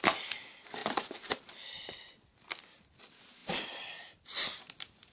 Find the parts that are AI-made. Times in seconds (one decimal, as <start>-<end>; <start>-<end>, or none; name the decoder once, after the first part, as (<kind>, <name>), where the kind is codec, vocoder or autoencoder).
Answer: 0.8-1.6 (vocoder, BigVGAN v2); 3.4-4.6